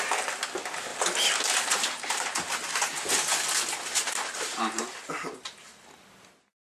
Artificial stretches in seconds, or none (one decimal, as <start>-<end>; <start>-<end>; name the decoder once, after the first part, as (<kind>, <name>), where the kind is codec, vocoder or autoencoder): 0.9-3.1 (vocoder, BigVGAN v2); 3.9-4.8

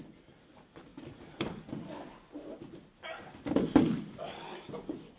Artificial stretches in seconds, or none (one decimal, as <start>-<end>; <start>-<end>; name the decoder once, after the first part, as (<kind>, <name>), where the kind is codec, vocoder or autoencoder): none